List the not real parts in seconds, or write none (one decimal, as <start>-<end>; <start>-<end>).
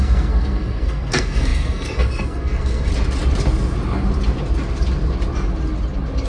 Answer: 0.0-2.9